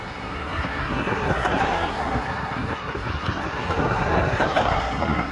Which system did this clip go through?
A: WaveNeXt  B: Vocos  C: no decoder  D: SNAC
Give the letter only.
D